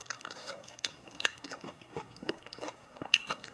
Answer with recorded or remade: remade